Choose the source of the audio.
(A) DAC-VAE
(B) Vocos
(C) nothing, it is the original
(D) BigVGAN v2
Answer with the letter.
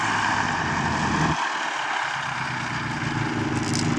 C